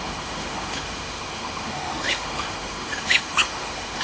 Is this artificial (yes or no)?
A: yes